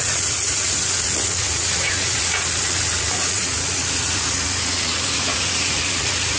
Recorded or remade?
remade